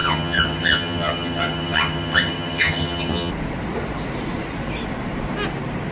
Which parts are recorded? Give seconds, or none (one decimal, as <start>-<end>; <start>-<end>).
3.3-5.9